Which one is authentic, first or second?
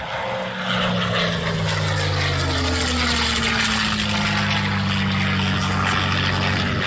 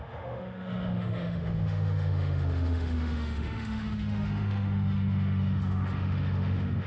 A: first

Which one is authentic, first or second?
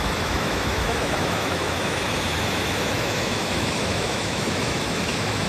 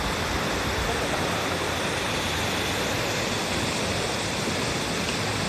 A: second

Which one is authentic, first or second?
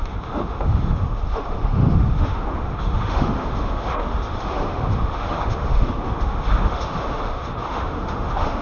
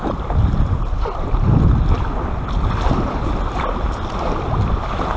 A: second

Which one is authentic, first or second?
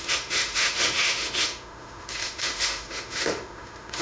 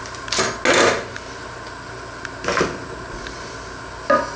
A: second